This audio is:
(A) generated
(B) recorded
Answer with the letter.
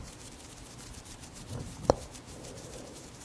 A